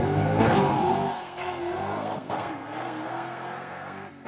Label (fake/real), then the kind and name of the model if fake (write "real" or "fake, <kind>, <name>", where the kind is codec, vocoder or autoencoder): fake, codec, SNAC